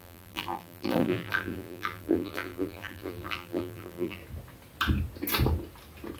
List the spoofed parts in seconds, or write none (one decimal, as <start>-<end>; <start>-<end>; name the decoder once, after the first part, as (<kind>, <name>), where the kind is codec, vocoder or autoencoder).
0.0-4.2 (vocoder, BigVGAN v2)